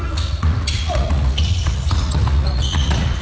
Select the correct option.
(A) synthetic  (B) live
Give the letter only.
A